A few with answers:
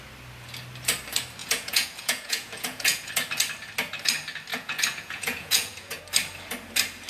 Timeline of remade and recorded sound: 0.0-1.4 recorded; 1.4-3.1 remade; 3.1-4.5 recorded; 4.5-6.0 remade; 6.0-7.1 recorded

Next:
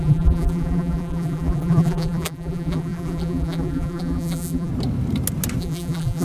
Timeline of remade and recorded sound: 0.0-4.7 remade; 4.7-5.6 recorded; 5.6-6.2 remade

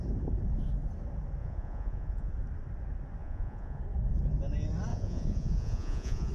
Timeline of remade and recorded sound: 0.0-1.4 recorded; 1.4-2.3 remade; 2.3-3.2 recorded; 3.2-3.8 remade; 3.8-4.9 recorded; 4.9-6.3 remade

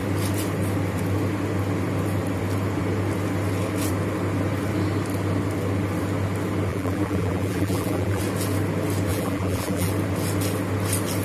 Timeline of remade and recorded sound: 0.0-6.7 recorded; 6.7-8.2 remade; 8.2-9.1 recorded; 9.1-9.9 remade; 9.9-11.2 recorded

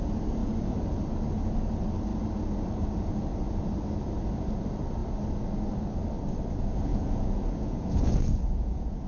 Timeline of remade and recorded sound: 0.0-6.9 recorded; 6.9-9.1 remade

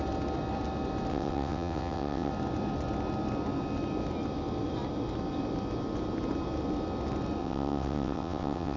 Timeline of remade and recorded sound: 0.0-1.1 recorded; 1.1-2.3 remade; 2.3-7.4 recorded; 7.4-8.8 remade

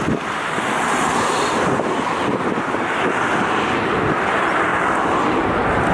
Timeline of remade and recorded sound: 0.0-5.9 recorded

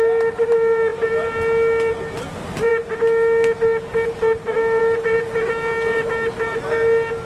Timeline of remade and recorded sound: 0.0-7.3 recorded